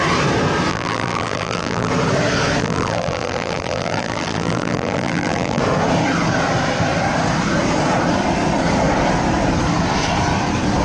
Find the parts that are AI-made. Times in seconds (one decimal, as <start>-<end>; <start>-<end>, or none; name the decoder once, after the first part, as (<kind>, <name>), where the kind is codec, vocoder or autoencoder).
0.7-1.9 (vocoder, BigVGAN v2); 2.6-5.6